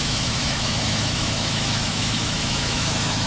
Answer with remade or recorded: remade